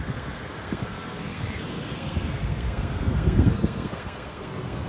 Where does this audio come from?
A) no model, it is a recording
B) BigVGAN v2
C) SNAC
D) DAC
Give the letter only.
C